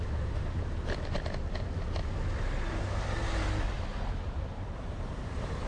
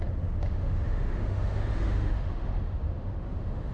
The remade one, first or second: second